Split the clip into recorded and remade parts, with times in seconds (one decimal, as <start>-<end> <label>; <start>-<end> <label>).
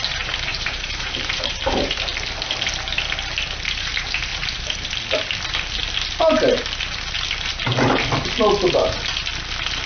0.0-0.5 recorded; 0.5-1.9 remade; 1.9-4.3 recorded; 4.3-4.9 remade; 4.9-9.9 recorded